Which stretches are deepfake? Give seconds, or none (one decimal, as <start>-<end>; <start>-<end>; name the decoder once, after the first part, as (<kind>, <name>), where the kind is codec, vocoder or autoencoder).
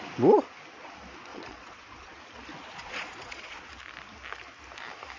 1.3-2.2 (vocoder, Vocos); 2.6-3.7